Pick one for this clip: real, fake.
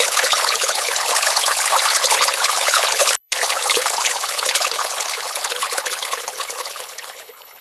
fake